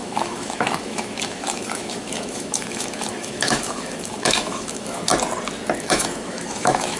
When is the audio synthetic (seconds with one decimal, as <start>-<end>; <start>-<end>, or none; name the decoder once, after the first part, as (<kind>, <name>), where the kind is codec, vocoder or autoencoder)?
0.0-5.1 (autoencoder, DAC-VAE); 5.8-7.0